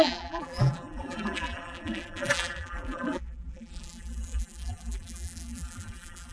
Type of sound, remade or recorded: remade